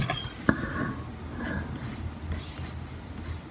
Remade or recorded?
recorded